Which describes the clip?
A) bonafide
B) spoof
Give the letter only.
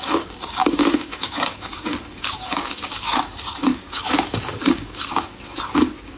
B